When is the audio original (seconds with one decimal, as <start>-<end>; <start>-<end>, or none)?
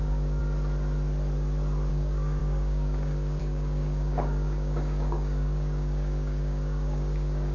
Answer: 0.4-1.9